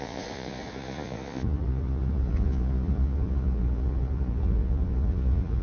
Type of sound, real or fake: fake